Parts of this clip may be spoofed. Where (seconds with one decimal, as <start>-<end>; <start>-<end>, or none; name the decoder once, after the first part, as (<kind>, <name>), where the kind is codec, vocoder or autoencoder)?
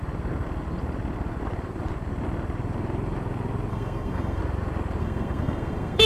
3.7-4.4 (codec, SNAC); 5.0-6.1